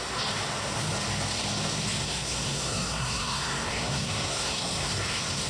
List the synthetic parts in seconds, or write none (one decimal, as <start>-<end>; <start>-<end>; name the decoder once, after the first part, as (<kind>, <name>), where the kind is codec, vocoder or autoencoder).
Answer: 2.0-5.5 (codec, SNAC)